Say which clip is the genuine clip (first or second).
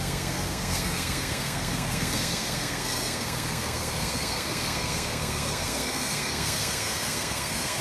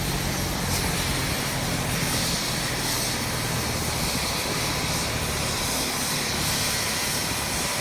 second